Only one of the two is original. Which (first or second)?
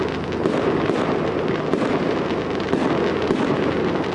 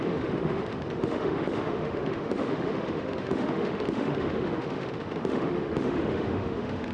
first